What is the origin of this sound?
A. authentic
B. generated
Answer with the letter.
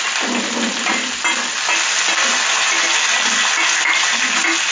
A